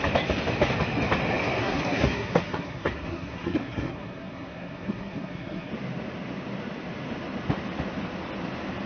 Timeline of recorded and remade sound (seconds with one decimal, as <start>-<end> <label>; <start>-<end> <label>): 0.0-1.6 recorded; 1.6-5.7 remade; 5.7-8.9 recorded